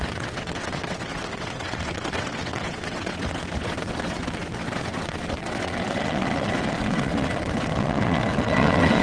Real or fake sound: fake